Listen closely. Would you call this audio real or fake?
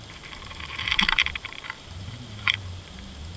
fake